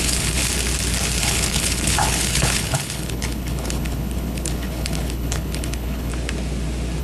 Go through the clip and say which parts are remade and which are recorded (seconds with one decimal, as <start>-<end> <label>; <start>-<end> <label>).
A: 0.0-0.4 remade; 0.4-1.2 recorded; 1.2-6.1 remade; 6.1-7.0 recorded